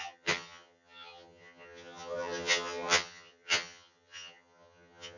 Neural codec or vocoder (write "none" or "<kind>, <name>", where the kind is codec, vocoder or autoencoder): vocoder, HiFi-GAN